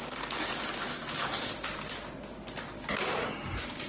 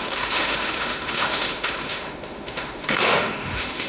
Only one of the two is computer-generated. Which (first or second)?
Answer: second